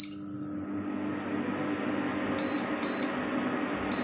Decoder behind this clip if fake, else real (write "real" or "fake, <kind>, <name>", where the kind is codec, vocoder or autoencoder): real